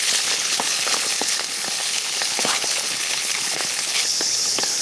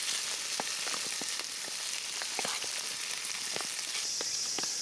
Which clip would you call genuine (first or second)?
second